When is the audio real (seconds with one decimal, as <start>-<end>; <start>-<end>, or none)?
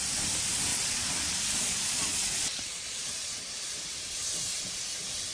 0.0-0.7; 3.9-5.3